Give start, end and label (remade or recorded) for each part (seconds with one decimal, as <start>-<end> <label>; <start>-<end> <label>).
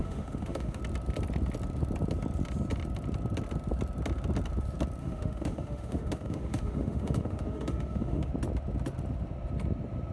0.0-0.8 remade; 0.8-5.0 recorded; 5.0-8.3 remade; 8.3-10.1 recorded